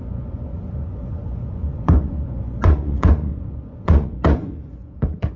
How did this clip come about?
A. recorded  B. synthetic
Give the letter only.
B